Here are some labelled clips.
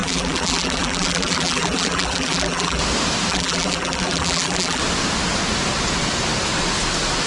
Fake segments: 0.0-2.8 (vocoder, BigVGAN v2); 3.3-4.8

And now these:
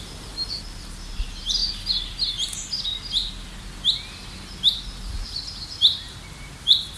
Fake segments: 0.0-1.6 (vocoder, BigVGAN v2); 5.2-7.0

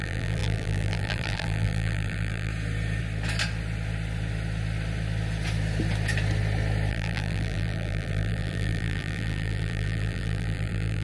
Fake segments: 0.0-2.5 (vocoder, BigVGAN v2); 6.9-11.0